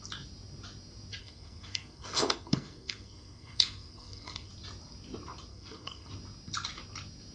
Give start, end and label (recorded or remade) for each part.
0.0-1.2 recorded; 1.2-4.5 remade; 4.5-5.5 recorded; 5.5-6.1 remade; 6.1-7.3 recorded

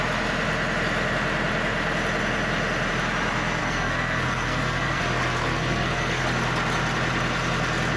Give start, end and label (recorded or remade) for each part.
0.0-3.6 recorded; 3.6-5.0 remade; 5.0-5.4 recorded; 5.4-6.2 remade; 6.2-8.0 recorded